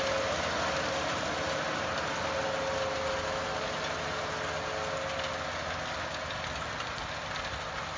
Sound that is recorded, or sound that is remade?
recorded